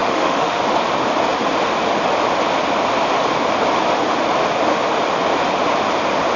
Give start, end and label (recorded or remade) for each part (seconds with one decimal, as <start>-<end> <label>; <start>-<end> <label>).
0.0-0.6 remade; 0.6-6.4 recorded